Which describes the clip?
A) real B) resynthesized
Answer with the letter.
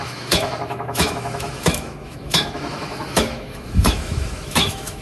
B